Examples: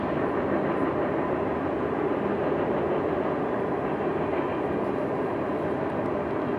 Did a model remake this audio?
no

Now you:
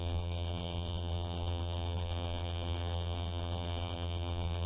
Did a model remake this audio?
yes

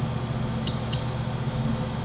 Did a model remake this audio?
no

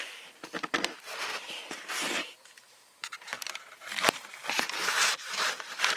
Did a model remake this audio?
yes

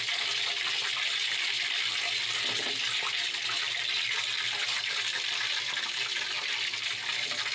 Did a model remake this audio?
no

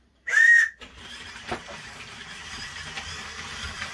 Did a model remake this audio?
yes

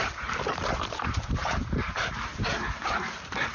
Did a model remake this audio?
yes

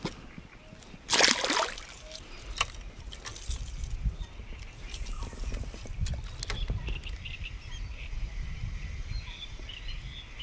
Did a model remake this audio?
no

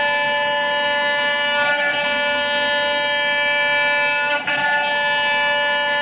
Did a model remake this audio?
no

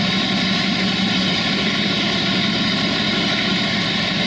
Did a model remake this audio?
no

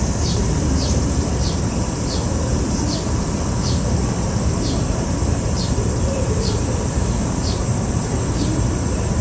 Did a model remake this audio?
yes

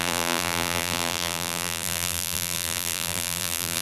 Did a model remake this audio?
yes